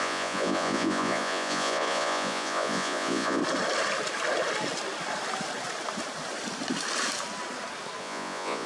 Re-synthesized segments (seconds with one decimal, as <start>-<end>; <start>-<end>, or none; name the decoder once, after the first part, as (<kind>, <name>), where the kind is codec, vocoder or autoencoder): 0.0-3.4 (vocoder, Vocos); 8.0-8.7